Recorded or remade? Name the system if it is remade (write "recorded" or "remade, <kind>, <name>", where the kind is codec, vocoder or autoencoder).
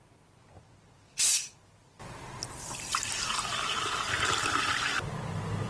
recorded